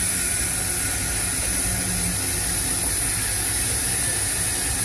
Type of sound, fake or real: real